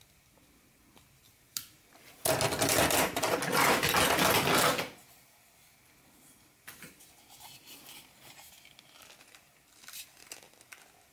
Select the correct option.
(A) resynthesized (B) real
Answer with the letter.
B